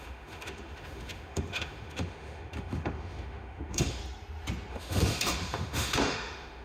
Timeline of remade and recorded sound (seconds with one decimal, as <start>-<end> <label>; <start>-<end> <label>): 0.0-4.0 remade; 4.0-4.7 recorded; 4.7-6.6 remade